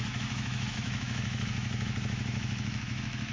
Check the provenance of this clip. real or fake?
fake